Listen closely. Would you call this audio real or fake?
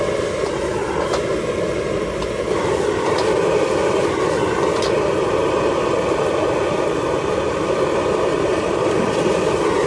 real